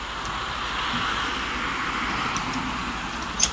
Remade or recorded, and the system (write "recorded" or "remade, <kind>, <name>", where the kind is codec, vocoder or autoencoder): recorded